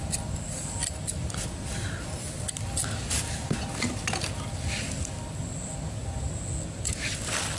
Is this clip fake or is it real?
real